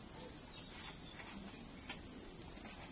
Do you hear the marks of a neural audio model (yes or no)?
no